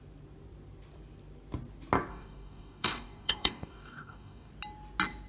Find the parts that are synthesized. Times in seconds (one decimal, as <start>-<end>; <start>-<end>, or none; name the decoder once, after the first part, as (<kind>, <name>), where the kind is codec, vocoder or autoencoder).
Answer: 2.1-4.5 (codec, DAC)